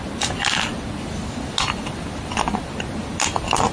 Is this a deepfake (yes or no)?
no